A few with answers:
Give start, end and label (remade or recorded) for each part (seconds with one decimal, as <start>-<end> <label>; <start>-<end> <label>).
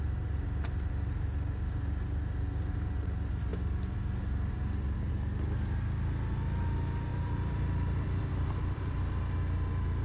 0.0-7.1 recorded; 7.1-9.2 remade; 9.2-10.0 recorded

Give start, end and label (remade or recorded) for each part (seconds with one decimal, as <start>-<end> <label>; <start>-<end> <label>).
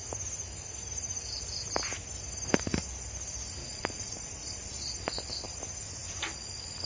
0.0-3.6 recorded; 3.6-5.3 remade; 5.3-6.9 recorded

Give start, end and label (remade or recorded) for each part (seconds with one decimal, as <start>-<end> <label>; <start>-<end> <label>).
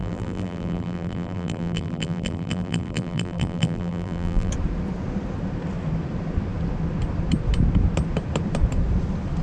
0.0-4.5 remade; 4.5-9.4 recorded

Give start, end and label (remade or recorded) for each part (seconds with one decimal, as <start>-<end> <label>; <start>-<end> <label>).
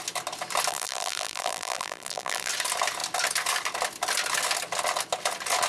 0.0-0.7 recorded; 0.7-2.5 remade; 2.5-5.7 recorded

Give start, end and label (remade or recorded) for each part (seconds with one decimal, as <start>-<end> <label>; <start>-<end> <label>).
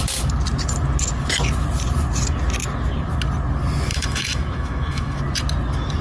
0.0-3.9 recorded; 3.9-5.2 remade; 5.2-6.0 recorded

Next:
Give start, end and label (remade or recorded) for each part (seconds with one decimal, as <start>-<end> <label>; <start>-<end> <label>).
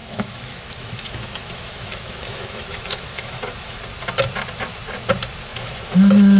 0.0-3.8 remade; 3.8-5.5 recorded; 5.5-6.4 remade